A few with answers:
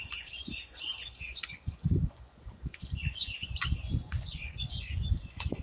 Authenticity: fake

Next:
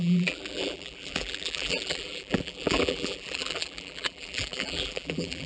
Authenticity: fake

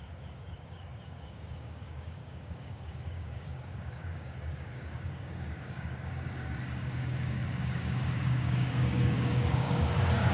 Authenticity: fake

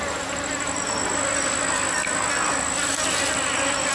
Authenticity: real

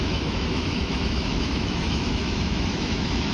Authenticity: fake